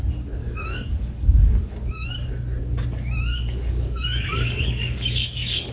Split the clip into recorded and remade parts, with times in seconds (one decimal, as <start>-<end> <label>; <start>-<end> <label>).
0.0-0.4 recorded; 0.4-2.3 remade; 2.3-3.3 recorded; 3.3-5.7 remade